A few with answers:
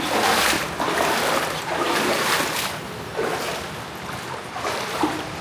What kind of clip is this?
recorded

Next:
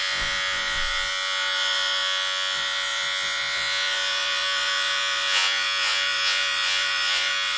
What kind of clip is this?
remade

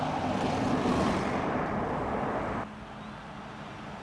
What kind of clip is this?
recorded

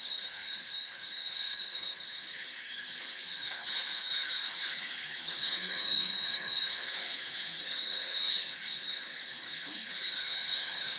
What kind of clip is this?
remade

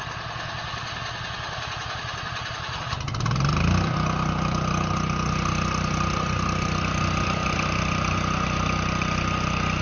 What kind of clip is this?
recorded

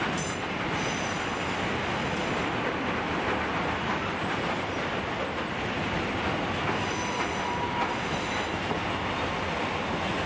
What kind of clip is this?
recorded